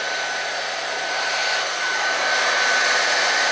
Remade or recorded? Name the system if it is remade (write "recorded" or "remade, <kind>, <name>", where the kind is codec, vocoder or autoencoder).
recorded